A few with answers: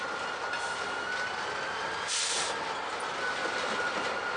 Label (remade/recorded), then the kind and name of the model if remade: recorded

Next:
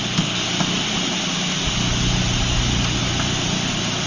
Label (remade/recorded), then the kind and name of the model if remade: recorded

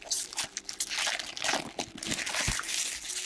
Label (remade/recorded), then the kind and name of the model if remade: recorded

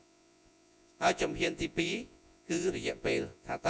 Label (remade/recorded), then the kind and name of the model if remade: remade, vocoder, Vocos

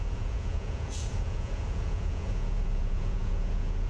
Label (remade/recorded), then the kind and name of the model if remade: remade, vocoder, Vocos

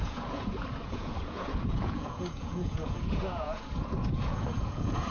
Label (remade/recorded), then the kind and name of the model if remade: remade, vocoder, Vocos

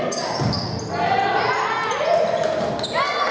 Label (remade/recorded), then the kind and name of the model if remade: recorded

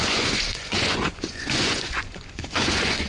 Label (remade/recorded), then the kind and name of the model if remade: remade, vocoder, Vocos